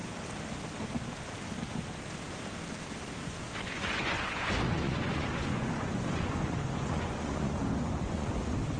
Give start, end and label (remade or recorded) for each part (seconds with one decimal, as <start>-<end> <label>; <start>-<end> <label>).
0.0-3.2 recorded; 3.2-8.3 remade; 8.3-8.8 recorded